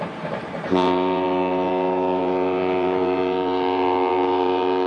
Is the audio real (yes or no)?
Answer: no